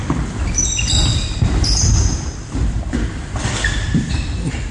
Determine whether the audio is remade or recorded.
remade